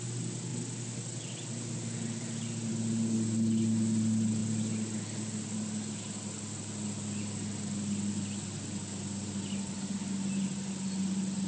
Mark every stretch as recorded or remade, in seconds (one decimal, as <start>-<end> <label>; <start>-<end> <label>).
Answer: 0.0-11.5 recorded